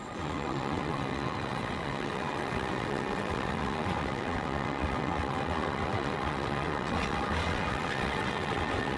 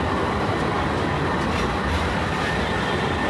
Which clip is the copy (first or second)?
first